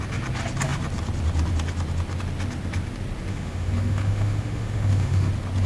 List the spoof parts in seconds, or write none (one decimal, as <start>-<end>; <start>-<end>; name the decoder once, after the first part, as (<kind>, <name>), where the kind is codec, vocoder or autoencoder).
3.3-5.3 (autoencoder, DAC-VAE)